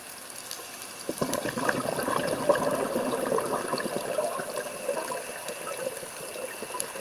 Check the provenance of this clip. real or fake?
real